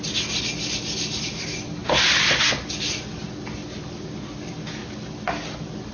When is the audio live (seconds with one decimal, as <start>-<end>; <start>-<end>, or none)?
0.0-5.9